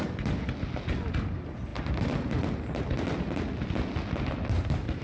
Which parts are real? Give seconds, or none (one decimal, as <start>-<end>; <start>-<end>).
0.0-5.0